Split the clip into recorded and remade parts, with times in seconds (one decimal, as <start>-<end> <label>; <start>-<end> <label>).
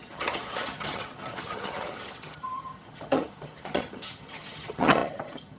0.0-5.6 remade